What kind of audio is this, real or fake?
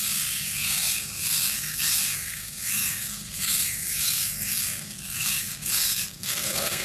fake